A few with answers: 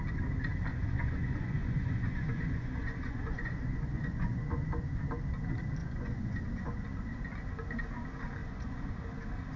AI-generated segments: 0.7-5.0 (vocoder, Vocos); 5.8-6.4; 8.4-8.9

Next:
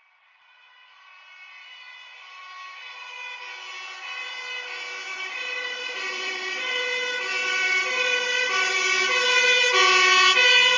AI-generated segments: 5.1-6.7 (vocoder, BigVGAN v2); 7.4-8.7

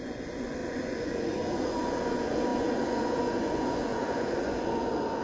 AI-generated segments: 0.0-5.2 (vocoder, Vocos)

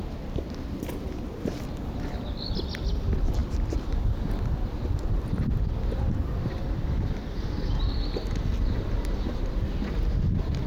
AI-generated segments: none

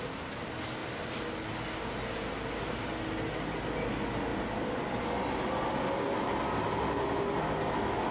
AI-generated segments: none

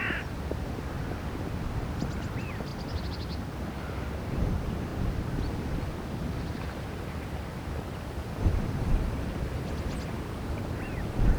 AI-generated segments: 0.0-2.7 (vocoder, BigVGAN v2); 4.0-11.4